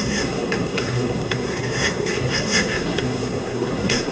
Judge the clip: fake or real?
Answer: fake